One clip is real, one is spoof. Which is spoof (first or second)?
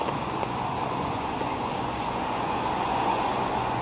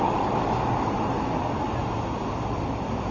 first